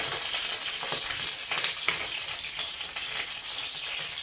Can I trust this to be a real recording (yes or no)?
yes